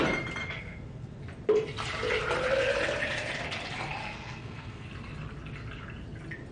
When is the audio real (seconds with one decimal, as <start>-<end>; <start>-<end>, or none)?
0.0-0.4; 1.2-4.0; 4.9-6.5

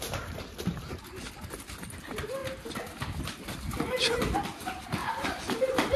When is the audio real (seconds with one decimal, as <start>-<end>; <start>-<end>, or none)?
0.0-5.0

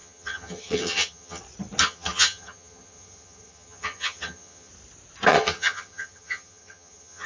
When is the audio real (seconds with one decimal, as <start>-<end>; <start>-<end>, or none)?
1.4-1.8; 4.7-5.3

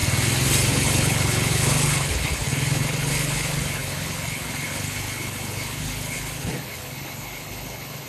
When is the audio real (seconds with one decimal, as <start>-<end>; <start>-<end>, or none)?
0.0-0.7

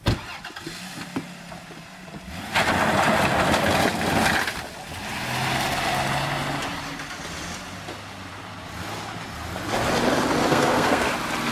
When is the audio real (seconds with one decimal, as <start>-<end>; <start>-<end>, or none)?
0.0-10.5; 11.1-11.5